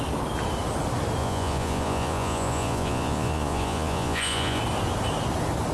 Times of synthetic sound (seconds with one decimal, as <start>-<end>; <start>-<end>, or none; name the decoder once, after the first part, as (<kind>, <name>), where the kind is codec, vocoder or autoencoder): 1.2-4.6 (vocoder, Vocos)